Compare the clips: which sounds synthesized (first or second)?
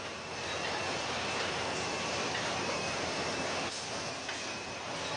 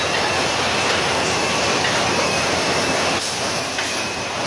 second